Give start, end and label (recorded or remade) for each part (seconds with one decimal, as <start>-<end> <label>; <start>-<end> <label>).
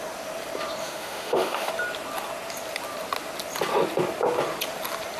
0.0-0.8 recorded; 0.8-1.7 remade; 1.7-5.2 recorded